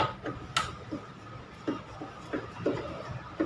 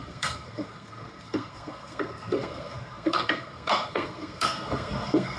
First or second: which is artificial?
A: second